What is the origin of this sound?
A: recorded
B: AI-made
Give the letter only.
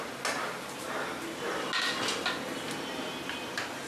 A